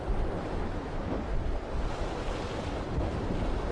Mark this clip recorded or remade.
recorded